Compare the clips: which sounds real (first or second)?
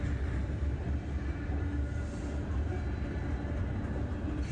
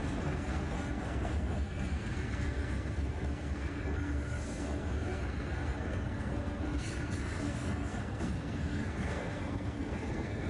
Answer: first